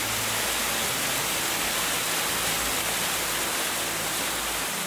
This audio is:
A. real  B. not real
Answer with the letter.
A